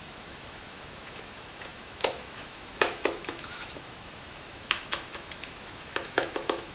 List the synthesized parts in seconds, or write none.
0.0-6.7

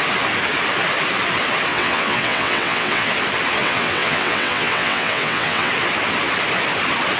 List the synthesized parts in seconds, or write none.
1.7-3.1; 3.6-5.7

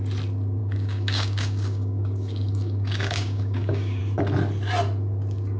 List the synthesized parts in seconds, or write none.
0.6-4.0

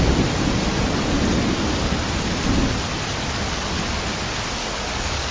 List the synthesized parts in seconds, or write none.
4.6-5.3

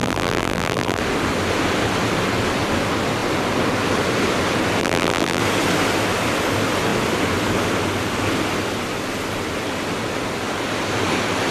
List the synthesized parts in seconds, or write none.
0.0-1.0; 4.8-5.4

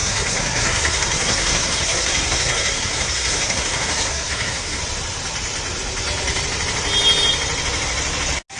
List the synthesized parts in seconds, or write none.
0.0-4.8